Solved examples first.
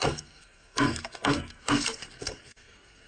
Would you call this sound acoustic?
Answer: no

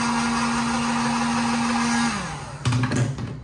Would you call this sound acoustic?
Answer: yes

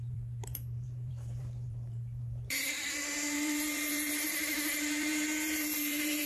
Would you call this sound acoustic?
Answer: no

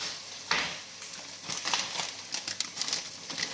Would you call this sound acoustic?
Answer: yes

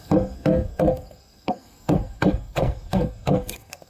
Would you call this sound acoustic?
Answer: no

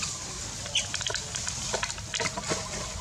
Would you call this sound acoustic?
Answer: yes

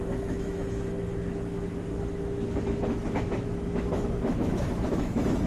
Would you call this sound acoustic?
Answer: no